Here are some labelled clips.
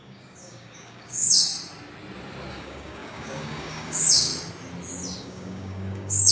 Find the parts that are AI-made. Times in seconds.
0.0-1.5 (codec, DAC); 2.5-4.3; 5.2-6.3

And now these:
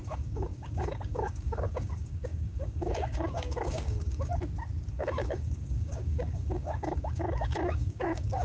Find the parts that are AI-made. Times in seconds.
0.0-4.3 (codec, DAC); 4.9-8.4

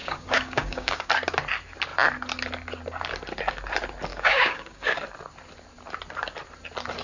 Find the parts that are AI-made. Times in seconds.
0.0-1.1 (codec, DAC); 4.1-5.0

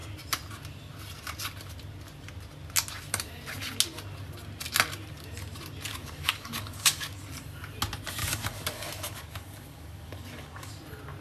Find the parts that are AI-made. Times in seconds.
5.9-7.2 (codec, DAC); 8.2-10.7

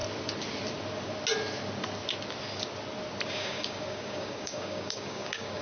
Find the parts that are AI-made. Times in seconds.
3.3-5.6 (codec, DAC)

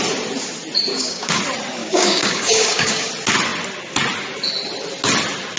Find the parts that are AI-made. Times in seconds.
0.9-1.4 (codec, DAC); 1.8-3.1

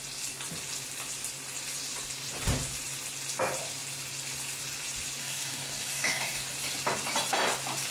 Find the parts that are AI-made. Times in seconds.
5.2-6.4 (codec, DAC)

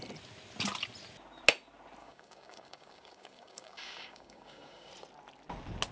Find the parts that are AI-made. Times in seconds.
2.0-4.9 (codec, DAC)